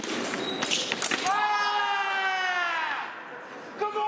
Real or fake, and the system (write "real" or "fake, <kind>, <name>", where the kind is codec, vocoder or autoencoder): real